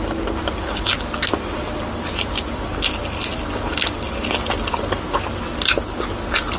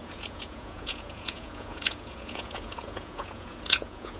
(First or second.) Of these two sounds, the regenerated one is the second